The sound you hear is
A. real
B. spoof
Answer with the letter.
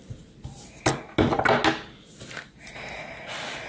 A